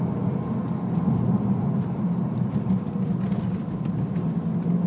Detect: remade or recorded recorded